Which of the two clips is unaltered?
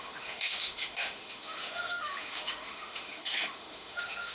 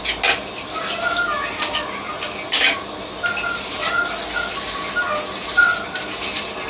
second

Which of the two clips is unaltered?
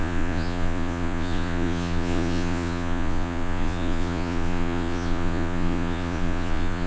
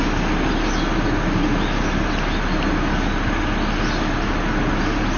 second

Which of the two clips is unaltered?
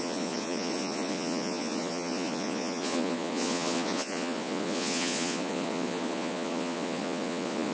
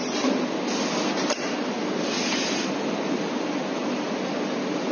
second